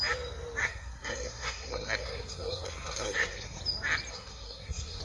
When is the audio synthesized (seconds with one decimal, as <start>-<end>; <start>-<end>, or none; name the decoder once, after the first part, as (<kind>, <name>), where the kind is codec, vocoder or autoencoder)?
0.6-3.6 (codec, SNAC); 4.1-5.0